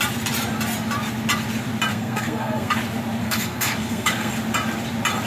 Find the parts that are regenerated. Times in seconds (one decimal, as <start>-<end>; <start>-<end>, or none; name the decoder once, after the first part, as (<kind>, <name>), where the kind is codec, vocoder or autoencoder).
1.9-2.7 (codec, SNAC); 3.2-4.3